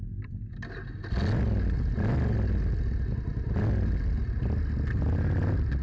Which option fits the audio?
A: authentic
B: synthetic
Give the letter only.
A